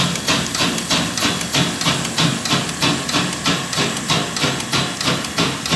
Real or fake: real